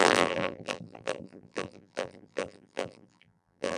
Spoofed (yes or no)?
yes